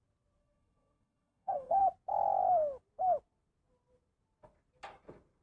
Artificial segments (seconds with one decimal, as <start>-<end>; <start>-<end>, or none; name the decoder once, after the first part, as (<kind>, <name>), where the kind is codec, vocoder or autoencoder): 0.4-1.8 (codec, SNAC)

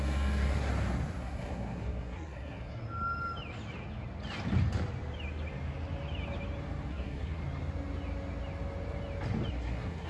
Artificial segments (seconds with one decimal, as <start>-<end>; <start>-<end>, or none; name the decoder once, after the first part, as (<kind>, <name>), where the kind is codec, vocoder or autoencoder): 0.0-0.7 (codec, SNAC); 1.2-2.8; 6.9-7.4; 9.5-10.1

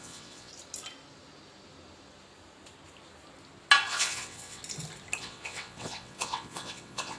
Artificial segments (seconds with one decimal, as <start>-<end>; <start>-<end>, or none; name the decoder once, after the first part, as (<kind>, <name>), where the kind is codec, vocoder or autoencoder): 0.0-0.5 (vocoder, WaveNeXt); 3.9-4.6; 5.2-7.2

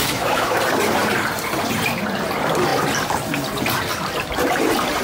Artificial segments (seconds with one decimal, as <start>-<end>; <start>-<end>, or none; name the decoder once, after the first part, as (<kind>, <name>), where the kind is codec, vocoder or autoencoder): 0.0-0.6 (autoencoder, DAC-VAE)

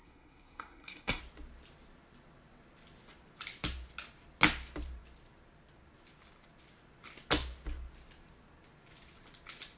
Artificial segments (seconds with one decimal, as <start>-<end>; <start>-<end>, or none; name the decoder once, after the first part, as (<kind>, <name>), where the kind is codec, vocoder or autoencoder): 0.0-1.2 (codec, SNAC)

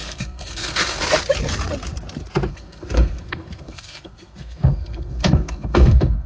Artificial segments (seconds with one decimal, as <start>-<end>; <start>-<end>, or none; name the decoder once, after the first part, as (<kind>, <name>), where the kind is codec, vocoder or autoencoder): 0.0-1.0 (codec, SNAC); 2.5-6.3

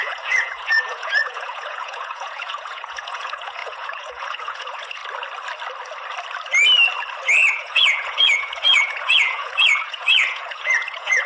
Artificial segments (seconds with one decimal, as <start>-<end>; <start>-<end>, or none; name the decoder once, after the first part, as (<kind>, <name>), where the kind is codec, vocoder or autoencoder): 0.0-5.0 (vocoder, Vocos); 7.6-11.3